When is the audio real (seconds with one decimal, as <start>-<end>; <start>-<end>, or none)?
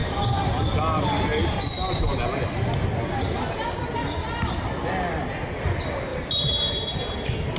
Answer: 0.6-7.6